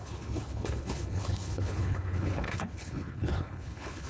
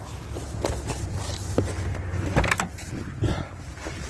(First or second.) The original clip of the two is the second